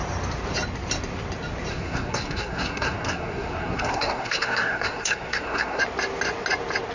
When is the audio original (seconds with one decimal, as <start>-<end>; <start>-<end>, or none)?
0.0-1.7; 5.8-6.9